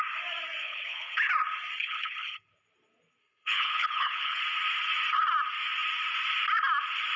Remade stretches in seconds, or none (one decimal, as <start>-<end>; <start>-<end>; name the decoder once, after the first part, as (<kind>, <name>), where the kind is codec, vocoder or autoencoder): 0.6-1.3 (codec, HILCodec); 1.8-2.5; 3.2-4.4